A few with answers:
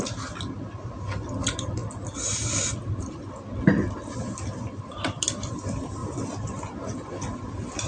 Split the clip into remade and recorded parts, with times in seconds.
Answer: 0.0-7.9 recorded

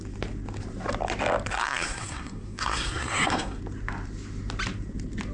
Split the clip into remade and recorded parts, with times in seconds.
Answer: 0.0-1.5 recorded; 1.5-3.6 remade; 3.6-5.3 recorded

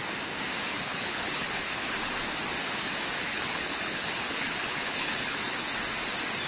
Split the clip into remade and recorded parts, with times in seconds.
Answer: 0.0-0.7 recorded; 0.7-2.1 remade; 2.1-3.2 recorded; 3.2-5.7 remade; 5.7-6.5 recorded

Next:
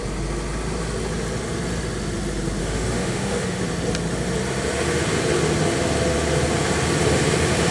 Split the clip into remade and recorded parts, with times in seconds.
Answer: 0.0-2.6 recorded; 2.6-3.6 remade; 3.6-7.7 recorded